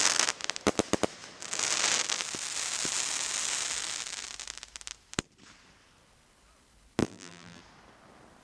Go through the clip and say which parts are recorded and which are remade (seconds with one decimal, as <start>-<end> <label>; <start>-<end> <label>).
0.0-7.0 recorded; 7.0-7.6 remade; 7.6-8.4 recorded

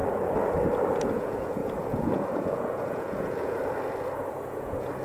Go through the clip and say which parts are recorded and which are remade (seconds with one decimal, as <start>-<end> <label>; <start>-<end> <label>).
0.0-1.1 recorded; 1.1-3.6 remade; 3.6-4.3 recorded; 4.3-5.0 remade